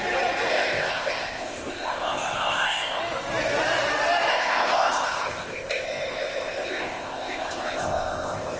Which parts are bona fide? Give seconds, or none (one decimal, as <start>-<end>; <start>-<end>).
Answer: 0.0-0.5; 3.0-4.3